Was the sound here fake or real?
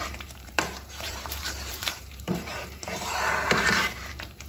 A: fake